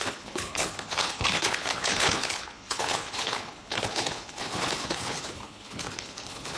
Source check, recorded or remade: remade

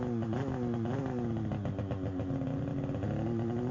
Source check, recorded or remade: recorded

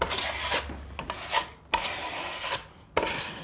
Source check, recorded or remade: recorded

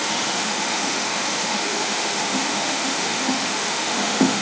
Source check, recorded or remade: remade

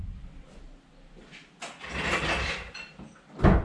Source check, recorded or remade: recorded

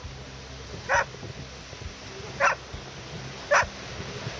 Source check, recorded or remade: recorded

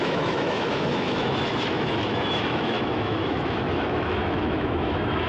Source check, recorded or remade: remade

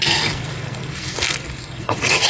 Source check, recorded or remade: remade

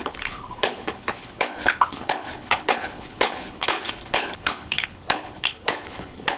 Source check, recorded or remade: remade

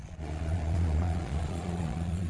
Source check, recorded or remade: remade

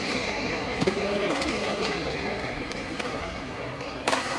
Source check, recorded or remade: remade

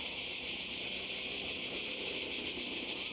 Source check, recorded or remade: recorded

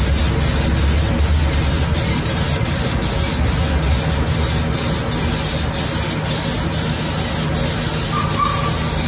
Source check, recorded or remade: recorded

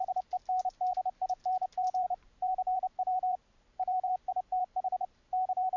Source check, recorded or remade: remade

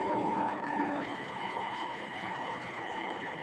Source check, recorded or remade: remade